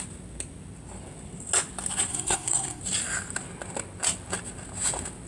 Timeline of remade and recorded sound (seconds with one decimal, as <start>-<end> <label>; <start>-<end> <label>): 0.0-2.1 recorded; 2.1-2.8 remade; 2.8-5.3 recorded